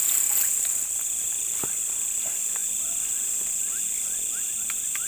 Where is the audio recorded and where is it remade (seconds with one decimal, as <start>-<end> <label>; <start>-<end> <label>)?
0.0-5.1 recorded